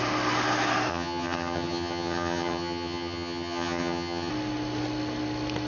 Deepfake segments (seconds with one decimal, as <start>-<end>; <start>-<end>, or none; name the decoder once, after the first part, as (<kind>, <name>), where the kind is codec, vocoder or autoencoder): 0.9-4.3 (vocoder, HiFi-GAN)